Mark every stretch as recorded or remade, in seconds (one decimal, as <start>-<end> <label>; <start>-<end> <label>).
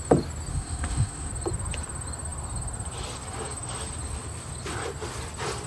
0.0-0.5 recorded; 0.5-1.3 remade; 1.3-5.7 recorded